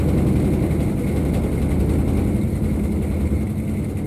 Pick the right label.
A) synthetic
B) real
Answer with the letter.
B